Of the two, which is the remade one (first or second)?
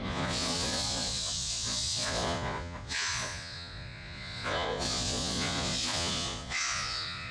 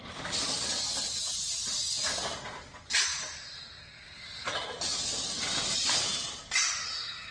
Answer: first